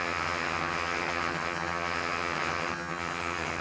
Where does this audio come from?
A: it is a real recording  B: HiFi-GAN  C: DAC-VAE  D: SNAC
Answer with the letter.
B